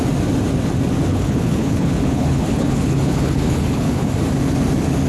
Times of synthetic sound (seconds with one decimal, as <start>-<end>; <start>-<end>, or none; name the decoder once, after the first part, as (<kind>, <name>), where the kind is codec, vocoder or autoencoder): 1.1-4.1 (codec, HILCodec)